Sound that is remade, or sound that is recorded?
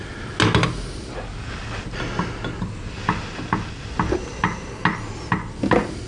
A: recorded